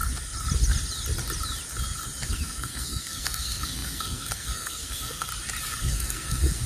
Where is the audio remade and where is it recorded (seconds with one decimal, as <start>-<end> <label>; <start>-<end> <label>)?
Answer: 0.0-2.3 recorded; 2.3-5.3 remade; 5.3-5.8 recorded; 5.8-6.7 remade